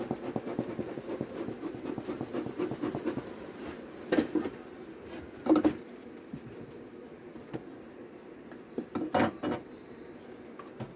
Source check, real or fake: real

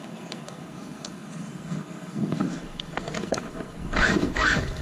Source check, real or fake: fake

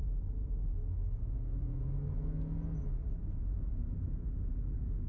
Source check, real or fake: real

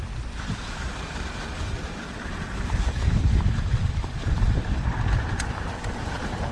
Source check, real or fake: fake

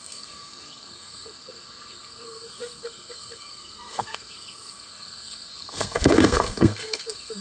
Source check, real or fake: fake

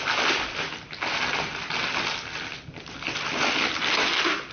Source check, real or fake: real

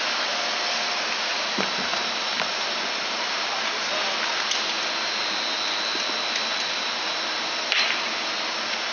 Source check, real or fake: real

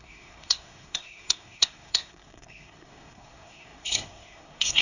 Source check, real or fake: fake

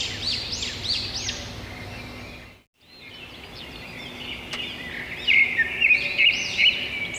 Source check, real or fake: real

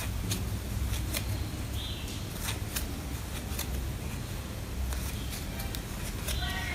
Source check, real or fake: real